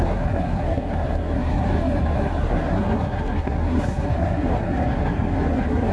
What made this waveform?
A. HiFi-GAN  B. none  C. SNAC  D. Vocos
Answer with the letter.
C